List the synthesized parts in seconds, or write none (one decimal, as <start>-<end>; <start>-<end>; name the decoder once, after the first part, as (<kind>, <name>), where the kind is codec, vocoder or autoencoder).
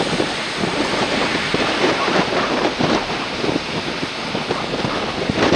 0.7-4.1 (vocoder, BigVGAN v2)